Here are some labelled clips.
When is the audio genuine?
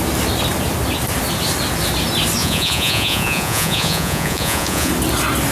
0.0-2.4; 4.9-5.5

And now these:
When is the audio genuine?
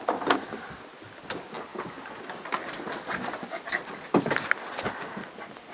0.0-5.7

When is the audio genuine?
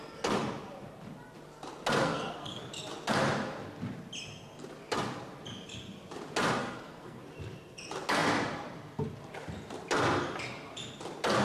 0.0-2.0; 2.6-6.6; 7.2-11.4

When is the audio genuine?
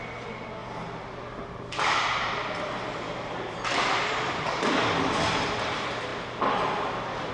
0.0-0.6; 4.7-7.3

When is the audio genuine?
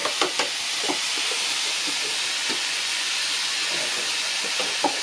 0.0-2.5; 4.6-5.0